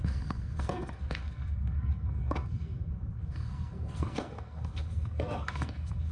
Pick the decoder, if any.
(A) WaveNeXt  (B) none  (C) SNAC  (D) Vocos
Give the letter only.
C